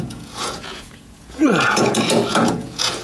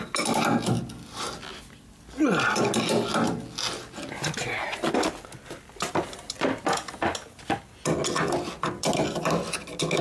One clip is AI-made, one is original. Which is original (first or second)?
second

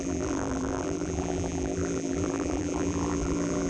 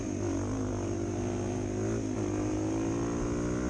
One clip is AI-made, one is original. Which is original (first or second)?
second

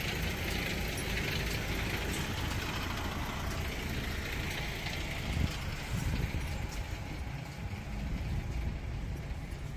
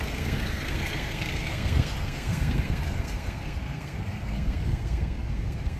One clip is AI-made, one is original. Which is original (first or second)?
first